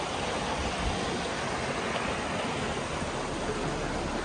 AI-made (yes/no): no